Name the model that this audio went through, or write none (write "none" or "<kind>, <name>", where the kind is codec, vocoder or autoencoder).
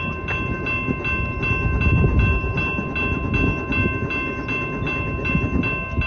none